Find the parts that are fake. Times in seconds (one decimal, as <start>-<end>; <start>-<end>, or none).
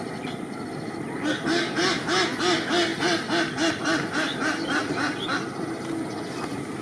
none